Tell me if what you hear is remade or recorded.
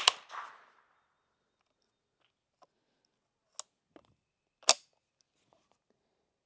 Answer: recorded